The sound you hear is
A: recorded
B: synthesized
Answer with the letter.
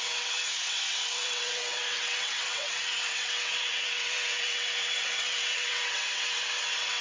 B